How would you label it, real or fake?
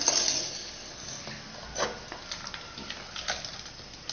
real